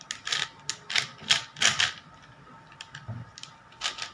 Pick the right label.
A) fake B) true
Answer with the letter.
B